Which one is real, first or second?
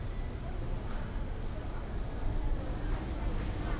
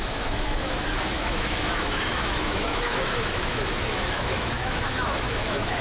first